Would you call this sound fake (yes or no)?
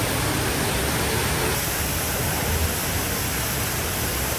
no